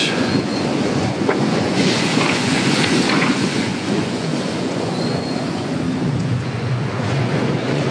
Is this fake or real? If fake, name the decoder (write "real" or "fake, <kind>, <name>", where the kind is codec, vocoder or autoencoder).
fake, vocoder, Vocos